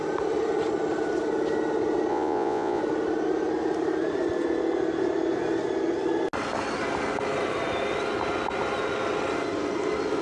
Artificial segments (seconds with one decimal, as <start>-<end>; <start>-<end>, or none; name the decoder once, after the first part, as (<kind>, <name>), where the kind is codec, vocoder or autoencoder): 2.1-2.8 (vocoder, Vocos)